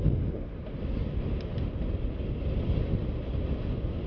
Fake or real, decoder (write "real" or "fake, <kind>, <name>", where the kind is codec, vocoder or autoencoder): real